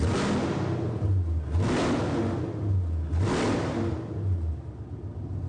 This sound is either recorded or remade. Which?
recorded